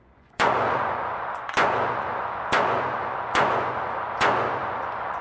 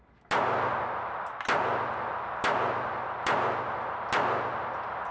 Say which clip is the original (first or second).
second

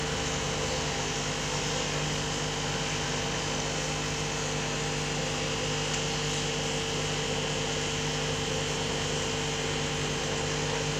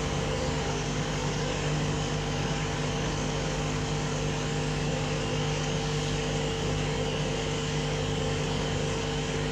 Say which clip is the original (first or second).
first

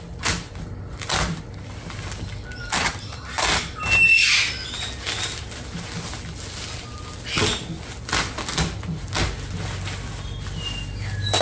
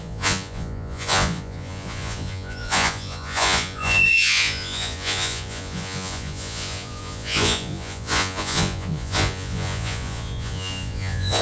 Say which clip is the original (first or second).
first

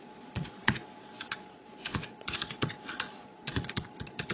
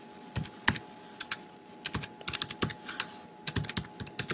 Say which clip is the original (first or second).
second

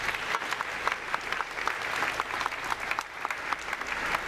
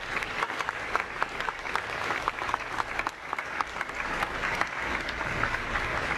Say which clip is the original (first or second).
first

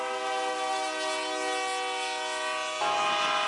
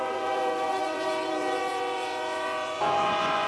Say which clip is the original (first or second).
first